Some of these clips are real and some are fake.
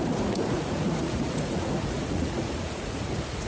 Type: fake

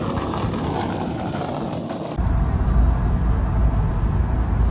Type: real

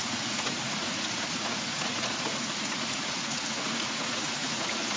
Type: fake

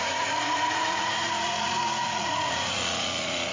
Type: fake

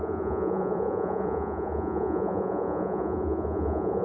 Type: fake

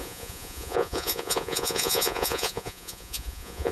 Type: fake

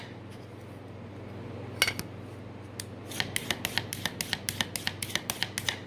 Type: real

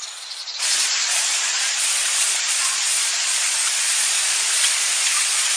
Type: fake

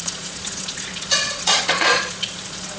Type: fake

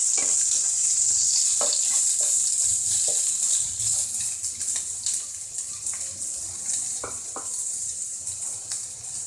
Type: real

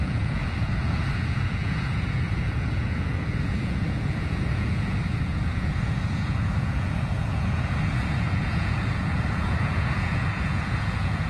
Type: fake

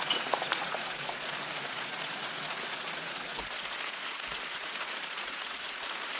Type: fake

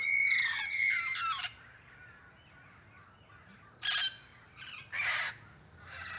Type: real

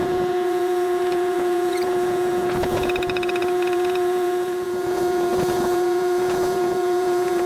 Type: fake